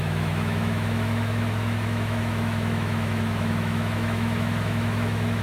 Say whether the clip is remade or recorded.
remade